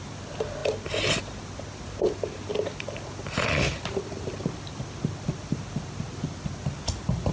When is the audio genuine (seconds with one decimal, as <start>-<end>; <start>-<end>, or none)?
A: 0.0-7.3